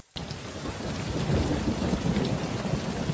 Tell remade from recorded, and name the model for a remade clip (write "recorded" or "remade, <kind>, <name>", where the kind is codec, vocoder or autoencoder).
recorded